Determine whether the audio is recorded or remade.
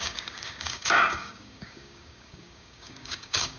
remade